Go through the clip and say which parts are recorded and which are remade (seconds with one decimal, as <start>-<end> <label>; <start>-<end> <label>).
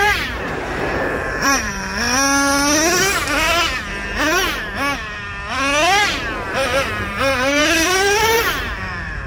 0.0-1.9 remade; 1.9-6.5 recorded; 6.5-9.3 remade